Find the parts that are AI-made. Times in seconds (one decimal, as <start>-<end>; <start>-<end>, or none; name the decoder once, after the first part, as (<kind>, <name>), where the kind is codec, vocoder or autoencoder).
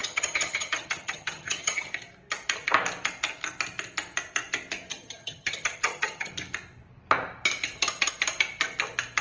0.0-1.9 (vocoder, HiFi-GAN); 4.9-6.3